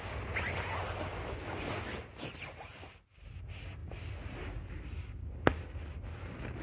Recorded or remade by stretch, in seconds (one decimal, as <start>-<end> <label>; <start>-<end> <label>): 0.0-6.6 recorded